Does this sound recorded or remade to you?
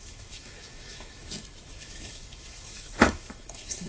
remade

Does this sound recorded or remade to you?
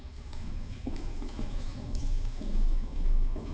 remade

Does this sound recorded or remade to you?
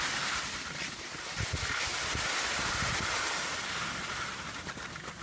recorded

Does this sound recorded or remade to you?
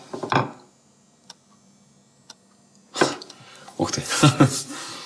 recorded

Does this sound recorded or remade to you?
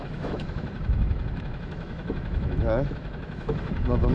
remade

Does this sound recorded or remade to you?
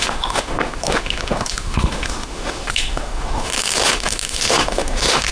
remade